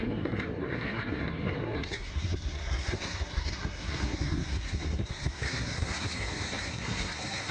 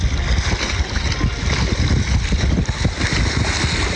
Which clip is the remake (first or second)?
first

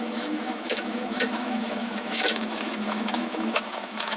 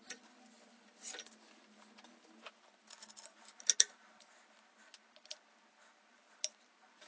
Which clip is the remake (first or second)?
first